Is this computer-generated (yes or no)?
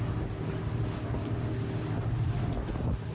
no